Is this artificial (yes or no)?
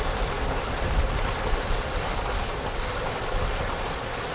no